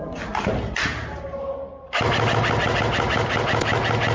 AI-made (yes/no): no